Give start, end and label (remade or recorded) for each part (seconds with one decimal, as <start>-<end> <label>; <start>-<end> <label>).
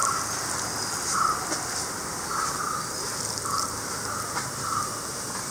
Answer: 0.0-5.5 recorded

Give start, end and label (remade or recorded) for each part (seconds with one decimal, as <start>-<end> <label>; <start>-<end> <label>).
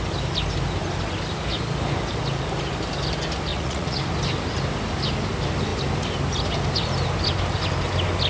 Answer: 0.0-3.5 recorded; 3.5-4.0 remade; 4.0-8.3 recorded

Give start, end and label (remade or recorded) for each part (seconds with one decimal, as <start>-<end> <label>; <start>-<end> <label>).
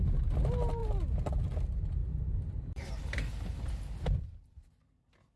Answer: 0.0-2.0 recorded; 2.0-3.7 remade; 3.7-5.4 recorded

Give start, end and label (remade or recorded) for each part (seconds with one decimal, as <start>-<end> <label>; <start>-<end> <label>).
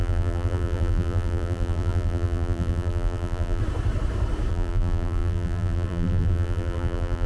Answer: 0.0-3.6 remade; 3.6-4.5 recorded; 4.5-7.3 remade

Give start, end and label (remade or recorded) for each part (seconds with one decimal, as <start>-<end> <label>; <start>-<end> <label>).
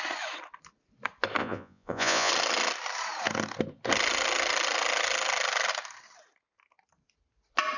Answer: 0.0-1.4 recorded; 1.4-2.3 remade; 2.3-7.8 recorded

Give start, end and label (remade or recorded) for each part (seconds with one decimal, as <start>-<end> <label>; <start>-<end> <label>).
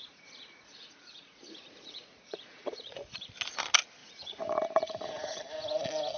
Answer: 0.0-3.2 remade; 3.2-4.0 recorded; 4.0-5.4 remade; 5.4-6.2 recorded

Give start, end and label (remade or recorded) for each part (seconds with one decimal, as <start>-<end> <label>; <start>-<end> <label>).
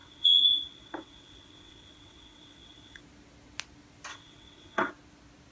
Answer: 0.0-3.0 remade; 3.0-4.1 recorded; 4.1-4.9 remade; 4.9-5.5 recorded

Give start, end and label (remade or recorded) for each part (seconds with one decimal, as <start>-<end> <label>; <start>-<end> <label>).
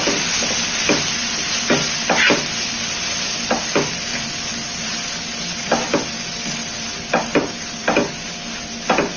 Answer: 0.0-9.2 recorded